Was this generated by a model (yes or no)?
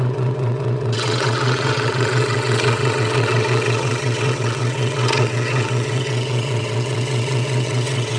yes